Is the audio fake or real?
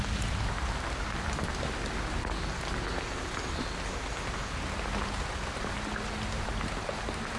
real